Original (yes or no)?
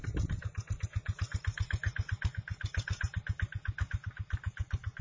yes